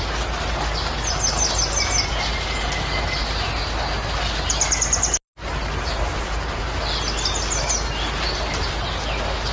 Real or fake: real